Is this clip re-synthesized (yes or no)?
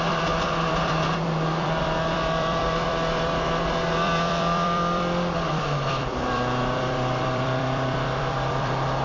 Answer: yes